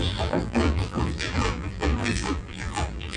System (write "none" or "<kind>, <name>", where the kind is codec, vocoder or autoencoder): vocoder, BigVGAN v2